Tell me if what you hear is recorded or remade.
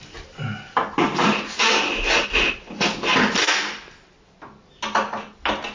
recorded